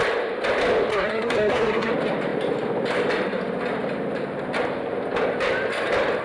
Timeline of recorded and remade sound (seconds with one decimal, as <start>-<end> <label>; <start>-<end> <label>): 0.0-0.9 recorded; 0.9-1.9 remade; 1.9-6.2 recorded